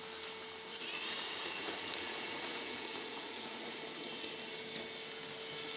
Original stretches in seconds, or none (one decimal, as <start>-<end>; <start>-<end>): 0.0-0.7; 3.8-5.8